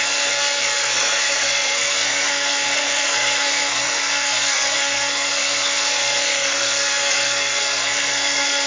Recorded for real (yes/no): no